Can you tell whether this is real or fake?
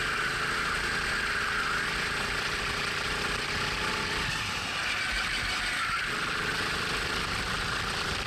real